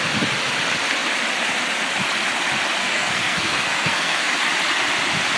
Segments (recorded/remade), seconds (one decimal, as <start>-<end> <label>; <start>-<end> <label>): 0.0-2.8 recorded; 2.8-4.3 remade; 4.3-5.4 recorded